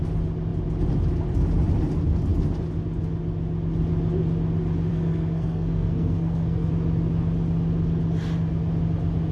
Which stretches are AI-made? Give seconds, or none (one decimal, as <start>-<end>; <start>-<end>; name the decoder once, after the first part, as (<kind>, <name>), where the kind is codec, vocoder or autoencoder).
4.9-6.7 (codec, SNAC)